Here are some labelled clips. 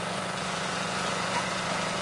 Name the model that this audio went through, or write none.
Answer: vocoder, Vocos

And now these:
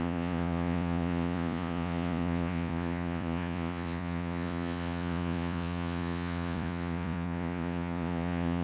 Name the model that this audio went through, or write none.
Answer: vocoder, Vocos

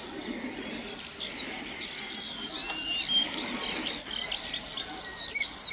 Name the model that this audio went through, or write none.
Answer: none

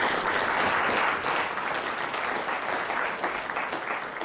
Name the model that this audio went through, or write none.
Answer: none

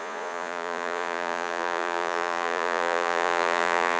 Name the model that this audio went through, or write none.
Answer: vocoder, Vocos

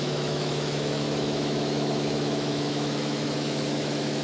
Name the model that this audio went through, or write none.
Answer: autoencoder, DAC-VAE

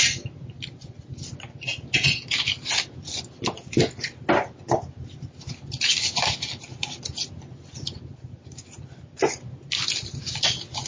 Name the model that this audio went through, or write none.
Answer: none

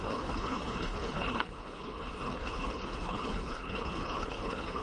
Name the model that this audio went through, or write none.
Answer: codec, HILCodec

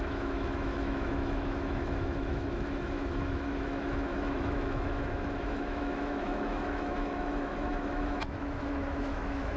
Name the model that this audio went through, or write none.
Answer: autoencoder, DAC-VAE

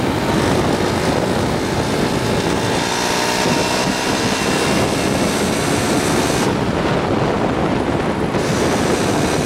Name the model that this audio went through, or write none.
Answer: none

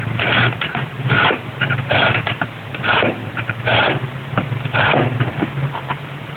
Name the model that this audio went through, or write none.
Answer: vocoder, BigVGAN v2